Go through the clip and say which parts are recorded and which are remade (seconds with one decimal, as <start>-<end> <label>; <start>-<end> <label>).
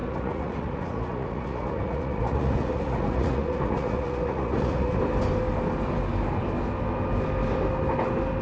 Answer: 0.0-5.0 remade; 5.0-8.4 recorded